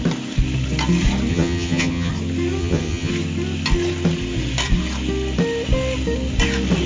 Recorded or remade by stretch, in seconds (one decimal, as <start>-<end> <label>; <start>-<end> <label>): 0.0-1.3 recorded; 1.3-2.1 remade; 2.1-2.6 recorded; 2.6-3.1 remade; 3.1-6.9 recorded